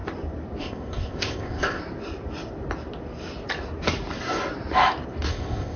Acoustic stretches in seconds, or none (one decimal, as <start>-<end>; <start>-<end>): 0.0-0.6; 1.8-5.3